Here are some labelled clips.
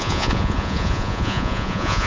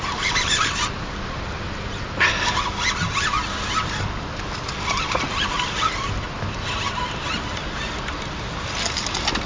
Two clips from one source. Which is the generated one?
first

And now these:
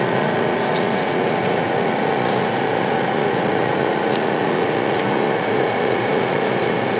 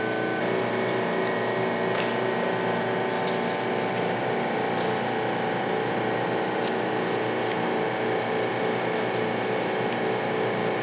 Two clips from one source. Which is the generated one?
first